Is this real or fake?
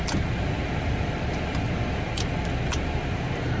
real